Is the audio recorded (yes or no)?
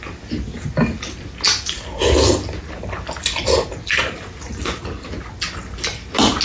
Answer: yes